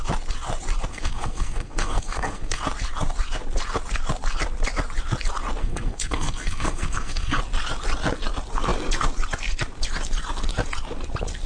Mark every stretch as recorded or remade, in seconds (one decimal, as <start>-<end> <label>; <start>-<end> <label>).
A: 0.0-0.9 recorded; 0.9-2.6 remade; 2.6-5.6 recorded; 5.6-7.4 remade; 7.4-11.5 recorded